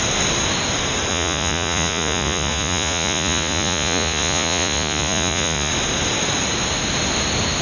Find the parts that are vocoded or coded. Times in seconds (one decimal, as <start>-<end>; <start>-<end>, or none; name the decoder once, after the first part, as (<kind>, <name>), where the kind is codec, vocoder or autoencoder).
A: 1.1-5.7 (vocoder, Vocos)